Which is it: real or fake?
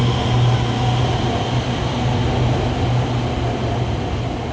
real